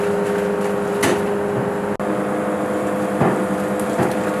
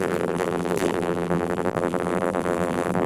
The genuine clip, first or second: first